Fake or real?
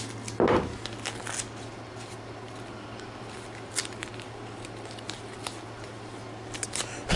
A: real